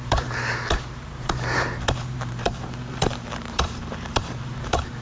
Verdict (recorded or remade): remade